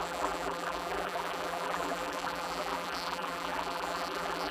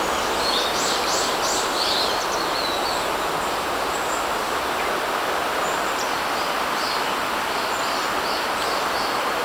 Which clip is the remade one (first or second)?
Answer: first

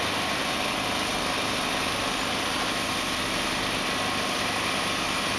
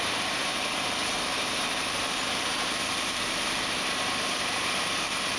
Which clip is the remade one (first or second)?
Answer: second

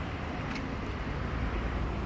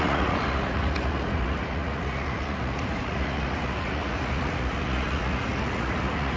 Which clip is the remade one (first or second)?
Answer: second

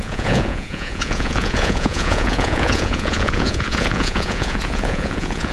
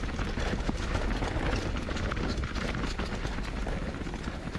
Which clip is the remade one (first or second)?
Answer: first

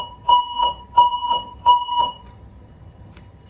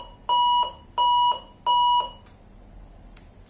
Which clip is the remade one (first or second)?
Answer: first